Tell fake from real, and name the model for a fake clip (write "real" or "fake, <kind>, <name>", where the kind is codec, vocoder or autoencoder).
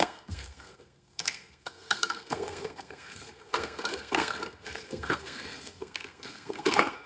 fake, codec, SNAC